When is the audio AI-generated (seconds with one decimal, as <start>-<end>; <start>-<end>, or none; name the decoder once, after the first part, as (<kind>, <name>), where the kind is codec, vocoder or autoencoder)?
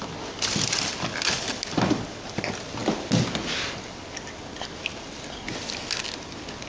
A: none